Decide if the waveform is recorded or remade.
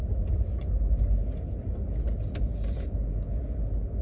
recorded